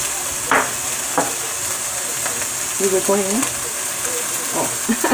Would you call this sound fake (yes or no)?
no